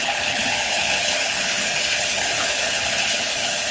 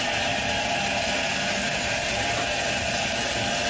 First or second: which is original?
second